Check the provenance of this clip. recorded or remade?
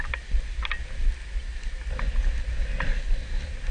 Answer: recorded